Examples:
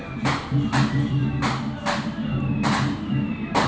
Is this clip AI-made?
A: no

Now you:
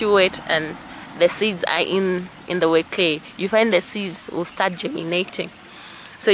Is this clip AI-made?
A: no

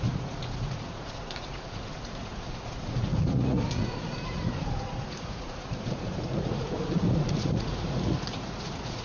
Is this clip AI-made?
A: yes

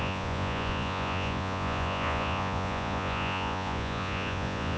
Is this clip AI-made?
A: yes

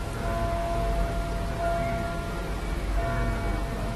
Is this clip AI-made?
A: no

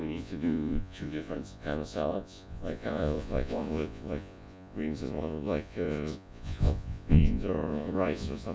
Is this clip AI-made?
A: yes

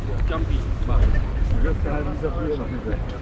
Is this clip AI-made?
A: no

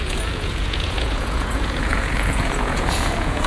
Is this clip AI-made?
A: yes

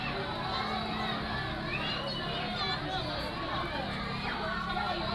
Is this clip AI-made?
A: no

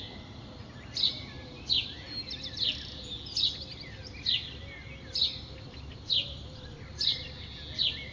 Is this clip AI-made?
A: no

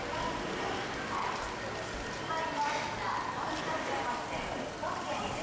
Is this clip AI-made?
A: no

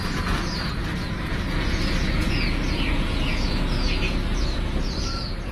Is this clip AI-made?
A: yes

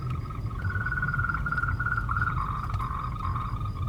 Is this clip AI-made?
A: yes